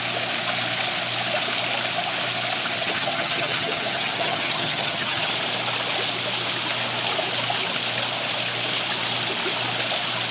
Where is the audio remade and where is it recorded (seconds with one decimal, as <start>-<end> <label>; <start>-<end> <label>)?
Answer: 0.0-2.8 recorded; 2.8-5.3 remade; 5.3-10.3 recorded